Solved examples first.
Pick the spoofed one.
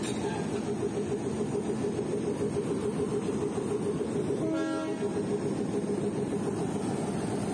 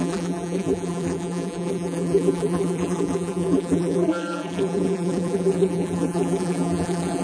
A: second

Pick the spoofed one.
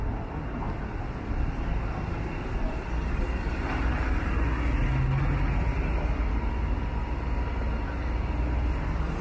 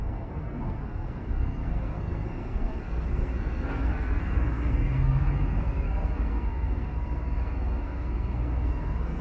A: second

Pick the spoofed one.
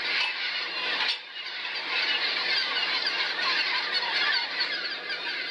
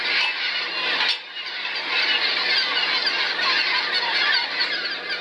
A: first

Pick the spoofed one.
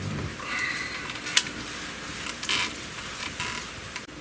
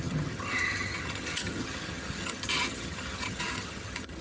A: second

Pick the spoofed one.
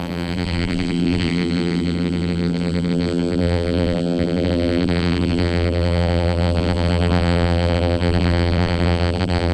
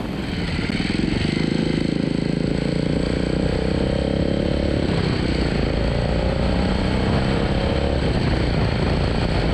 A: first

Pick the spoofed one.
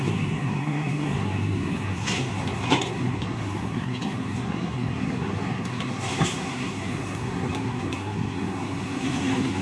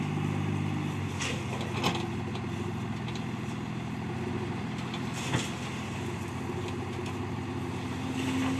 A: first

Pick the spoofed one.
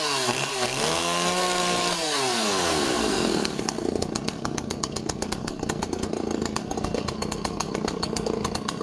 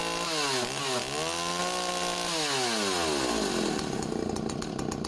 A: first